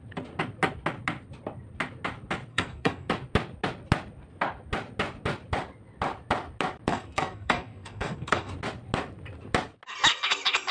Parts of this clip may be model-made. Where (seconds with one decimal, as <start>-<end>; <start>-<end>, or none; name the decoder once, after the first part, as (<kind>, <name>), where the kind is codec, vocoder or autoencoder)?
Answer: 2.5-3.1 (codec, SNAC); 6.9-8.5